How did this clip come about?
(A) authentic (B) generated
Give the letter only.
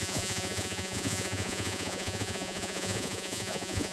B